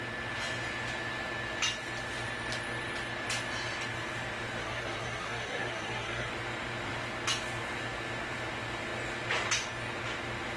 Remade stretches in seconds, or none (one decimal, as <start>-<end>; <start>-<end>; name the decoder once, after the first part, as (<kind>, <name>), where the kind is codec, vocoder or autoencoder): 4.6-6.3 (codec, SNAC)